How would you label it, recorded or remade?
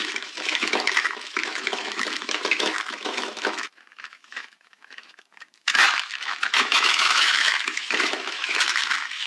remade